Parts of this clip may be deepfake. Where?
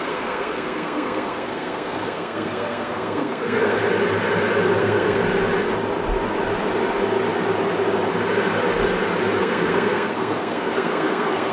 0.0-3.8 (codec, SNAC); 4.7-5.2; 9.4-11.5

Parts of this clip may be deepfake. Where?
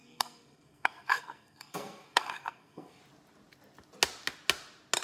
0.0-3.0 (codec, SNAC)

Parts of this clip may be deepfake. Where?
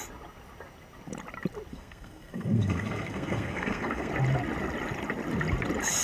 1.7-4.1 (codec, SNAC)